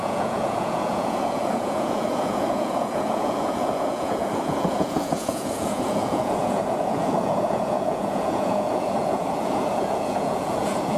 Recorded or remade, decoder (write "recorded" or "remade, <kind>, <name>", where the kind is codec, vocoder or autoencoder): remade, vocoder, Vocos